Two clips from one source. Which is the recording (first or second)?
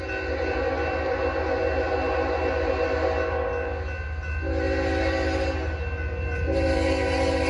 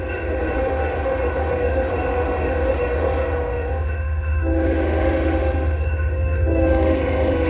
first